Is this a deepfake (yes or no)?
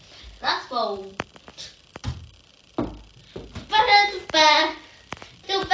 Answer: no